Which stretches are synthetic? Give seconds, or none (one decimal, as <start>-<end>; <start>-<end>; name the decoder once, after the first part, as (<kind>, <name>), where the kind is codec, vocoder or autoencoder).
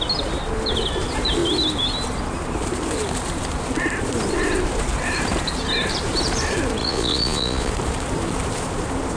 6.8-7.7 (vocoder, Vocos)